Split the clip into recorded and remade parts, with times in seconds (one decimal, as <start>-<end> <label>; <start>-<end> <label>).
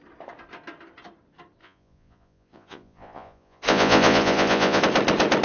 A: 0.0-1.6 recorded; 1.6-4.8 remade; 4.8-5.4 recorded